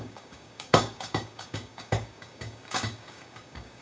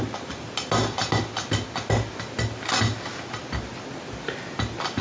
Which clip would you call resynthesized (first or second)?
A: first